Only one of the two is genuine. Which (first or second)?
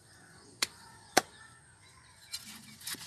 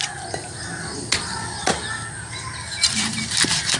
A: second